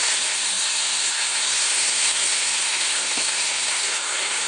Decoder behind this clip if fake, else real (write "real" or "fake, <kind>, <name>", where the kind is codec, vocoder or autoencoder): fake, codec, SNAC